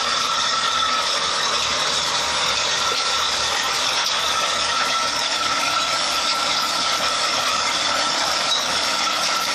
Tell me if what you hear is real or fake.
fake